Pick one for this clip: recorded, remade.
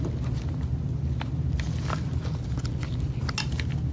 recorded